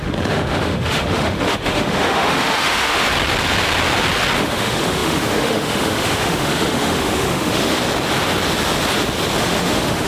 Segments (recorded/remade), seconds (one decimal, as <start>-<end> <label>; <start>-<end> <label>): 0.0-3.0 remade; 3.0-4.4 recorded; 4.4-7.8 remade; 7.8-9.4 recorded; 9.4-10.1 remade